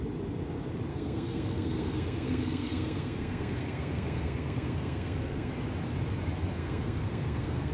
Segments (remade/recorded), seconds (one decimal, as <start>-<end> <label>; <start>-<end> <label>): 0.0-0.9 recorded; 0.9-5.5 remade; 5.5-6.6 recorded; 6.6-7.7 remade